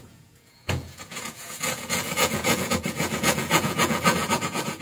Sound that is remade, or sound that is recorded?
remade